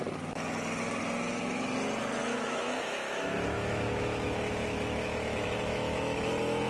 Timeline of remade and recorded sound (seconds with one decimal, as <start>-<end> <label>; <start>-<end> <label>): 0.0-2.3 recorded; 2.3-6.3 remade; 6.3-6.7 recorded